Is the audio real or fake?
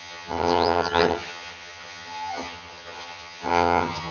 fake